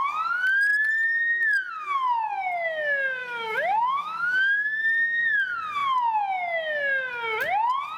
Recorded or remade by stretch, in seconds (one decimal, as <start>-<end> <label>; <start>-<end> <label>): 0.0-3.2 recorded; 3.2-5.2 remade; 5.2-8.0 recorded